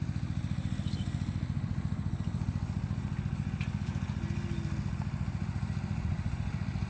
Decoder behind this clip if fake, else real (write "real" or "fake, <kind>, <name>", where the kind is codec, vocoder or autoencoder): real